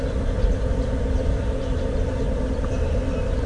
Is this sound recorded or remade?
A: recorded